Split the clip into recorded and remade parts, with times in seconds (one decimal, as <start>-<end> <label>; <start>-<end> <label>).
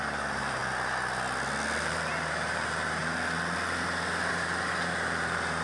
0.0-0.6 remade; 0.6-1.8 recorded; 1.8-3.0 remade; 3.0-4.3 recorded; 4.3-5.6 remade